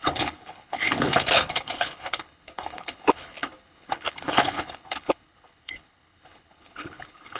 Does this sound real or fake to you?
fake